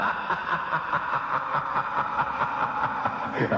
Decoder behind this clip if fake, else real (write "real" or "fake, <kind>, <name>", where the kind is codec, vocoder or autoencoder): fake, vocoder, BigVGAN v2